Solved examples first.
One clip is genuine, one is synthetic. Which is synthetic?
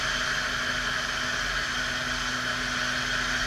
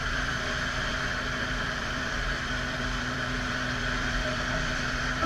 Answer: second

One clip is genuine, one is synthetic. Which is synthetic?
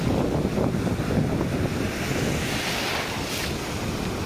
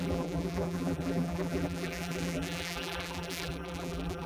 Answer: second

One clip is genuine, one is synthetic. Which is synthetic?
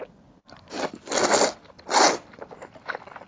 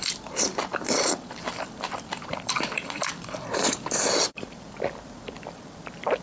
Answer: second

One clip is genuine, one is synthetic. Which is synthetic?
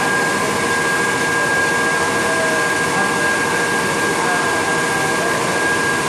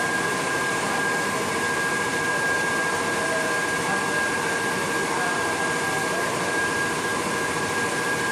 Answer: second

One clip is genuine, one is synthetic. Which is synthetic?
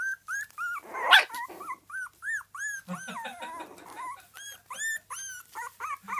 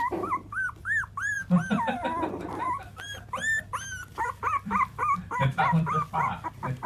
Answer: second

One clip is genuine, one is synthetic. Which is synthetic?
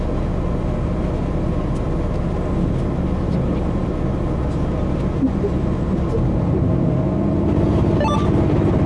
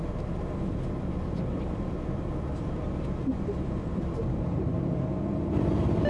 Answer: second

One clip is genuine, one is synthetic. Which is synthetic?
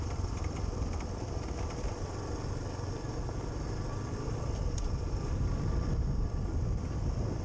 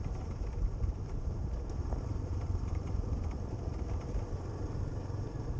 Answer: second